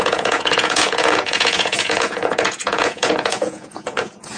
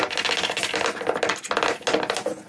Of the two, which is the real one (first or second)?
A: second